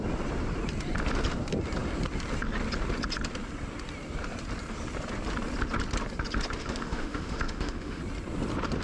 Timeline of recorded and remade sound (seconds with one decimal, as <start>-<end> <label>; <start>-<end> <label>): 0.0-6.6 recorded; 6.6-8.0 remade; 8.0-8.8 recorded